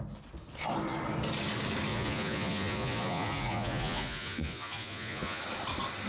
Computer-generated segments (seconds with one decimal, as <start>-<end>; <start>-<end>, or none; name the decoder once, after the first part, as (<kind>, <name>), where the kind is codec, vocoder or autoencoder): 1.9-5.4 (vocoder, Vocos)